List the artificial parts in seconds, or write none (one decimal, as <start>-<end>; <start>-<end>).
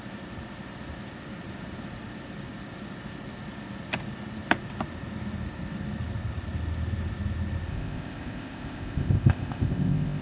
7.7-10.2